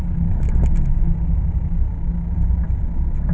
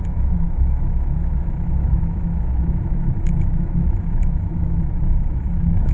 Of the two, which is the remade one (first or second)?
second